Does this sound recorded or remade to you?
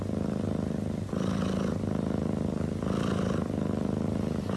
recorded